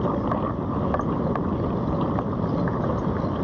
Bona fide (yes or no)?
yes